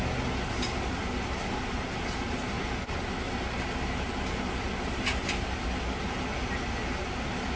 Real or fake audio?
real